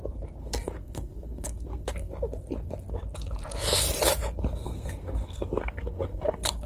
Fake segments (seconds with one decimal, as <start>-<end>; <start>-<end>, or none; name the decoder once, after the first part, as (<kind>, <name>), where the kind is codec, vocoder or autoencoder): 0.4-2.1 (codec, SNAC); 4.6-6.7